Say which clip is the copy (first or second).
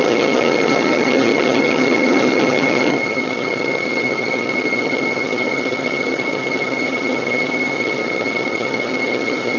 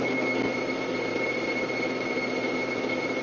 first